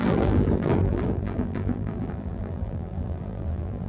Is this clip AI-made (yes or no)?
yes